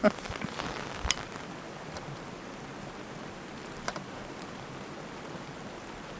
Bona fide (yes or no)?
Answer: no